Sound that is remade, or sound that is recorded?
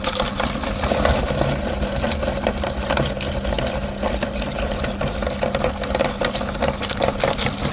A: recorded